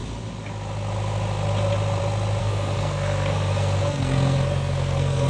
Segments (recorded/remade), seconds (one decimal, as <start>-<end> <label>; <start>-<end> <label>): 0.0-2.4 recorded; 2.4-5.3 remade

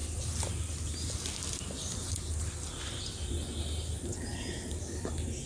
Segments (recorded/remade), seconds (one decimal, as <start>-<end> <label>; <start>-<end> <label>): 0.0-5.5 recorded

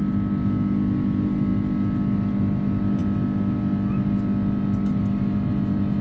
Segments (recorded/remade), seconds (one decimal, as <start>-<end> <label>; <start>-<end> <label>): 0.0-6.0 recorded

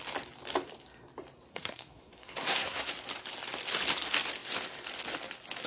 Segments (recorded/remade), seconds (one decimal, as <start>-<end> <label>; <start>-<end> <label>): 0.0-1.5 recorded; 1.5-2.9 remade; 2.9-5.7 recorded

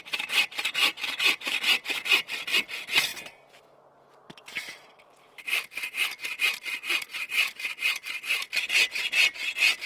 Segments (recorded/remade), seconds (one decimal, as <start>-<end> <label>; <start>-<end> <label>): 0.0-0.8 recorded; 0.8-1.6 remade; 1.6-9.9 recorded

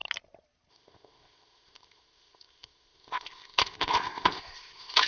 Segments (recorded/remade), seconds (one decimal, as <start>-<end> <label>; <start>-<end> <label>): 0.0-0.7 recorded; 0.7-5.1 remade

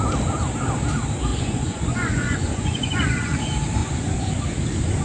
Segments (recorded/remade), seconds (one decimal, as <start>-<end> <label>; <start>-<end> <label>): 0.0-1.3 recorded; 1.3-3.4 remade; 3.4-3.8 recorded; 3.8-4.3 remade; 4.3-5.0 recorded